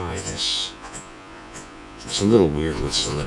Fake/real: fake